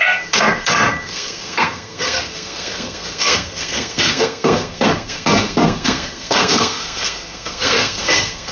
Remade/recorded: remade